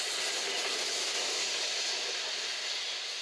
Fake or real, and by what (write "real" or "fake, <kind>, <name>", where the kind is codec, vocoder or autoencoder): real